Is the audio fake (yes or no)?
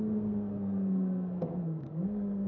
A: yes